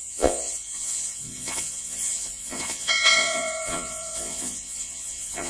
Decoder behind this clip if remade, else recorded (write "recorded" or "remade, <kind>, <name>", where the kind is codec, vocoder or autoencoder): remade, vocoder, Vocos